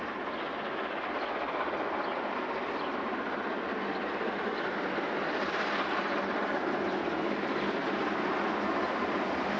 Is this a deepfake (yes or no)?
no